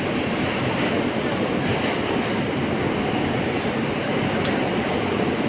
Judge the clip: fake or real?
real